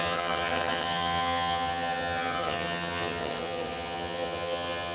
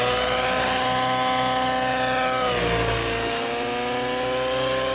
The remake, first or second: first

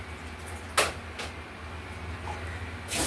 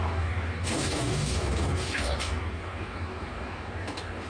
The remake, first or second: second